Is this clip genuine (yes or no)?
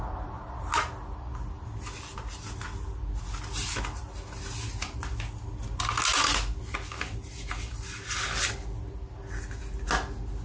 yes